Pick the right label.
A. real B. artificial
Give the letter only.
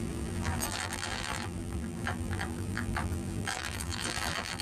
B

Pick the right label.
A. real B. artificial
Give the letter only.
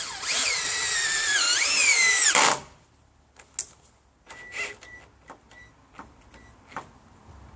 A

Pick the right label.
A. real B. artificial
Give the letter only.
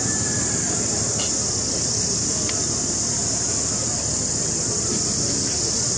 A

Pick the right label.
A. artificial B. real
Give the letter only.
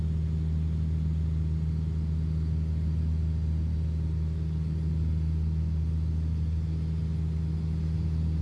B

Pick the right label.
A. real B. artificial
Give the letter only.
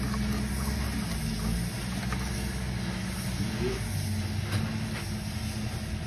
A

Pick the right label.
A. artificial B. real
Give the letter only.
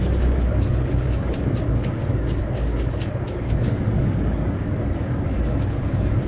A